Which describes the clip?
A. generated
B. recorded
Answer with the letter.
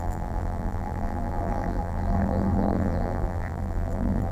A